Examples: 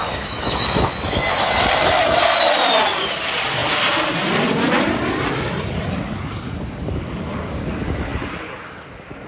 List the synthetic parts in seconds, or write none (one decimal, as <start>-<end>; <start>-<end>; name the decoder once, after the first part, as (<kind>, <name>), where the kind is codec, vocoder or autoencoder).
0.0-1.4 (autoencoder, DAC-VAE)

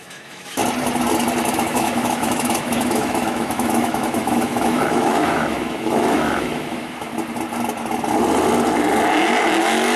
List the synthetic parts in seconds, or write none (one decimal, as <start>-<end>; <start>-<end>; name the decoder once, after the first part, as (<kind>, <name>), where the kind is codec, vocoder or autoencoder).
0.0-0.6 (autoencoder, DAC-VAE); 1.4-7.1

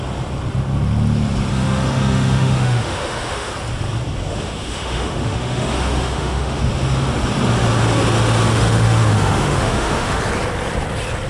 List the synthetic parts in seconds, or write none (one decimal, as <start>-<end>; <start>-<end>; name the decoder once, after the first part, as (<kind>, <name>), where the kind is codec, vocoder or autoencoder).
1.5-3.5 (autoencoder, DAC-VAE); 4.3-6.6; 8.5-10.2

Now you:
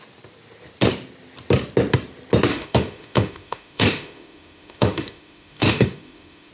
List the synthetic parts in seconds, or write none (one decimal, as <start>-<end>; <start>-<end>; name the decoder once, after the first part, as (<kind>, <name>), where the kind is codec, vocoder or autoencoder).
2.5-6.5 (autoencoder, DAC-VAE)

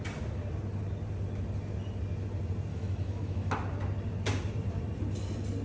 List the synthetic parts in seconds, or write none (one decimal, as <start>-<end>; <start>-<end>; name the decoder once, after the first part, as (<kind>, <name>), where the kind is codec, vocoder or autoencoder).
2.7-3.5 (autoencoder, DAC-VAE)

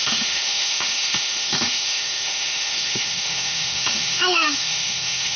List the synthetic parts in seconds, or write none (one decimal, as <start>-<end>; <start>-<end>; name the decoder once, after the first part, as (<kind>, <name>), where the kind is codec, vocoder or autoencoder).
0.0-5.4 (autoencoder, DAC-VAE)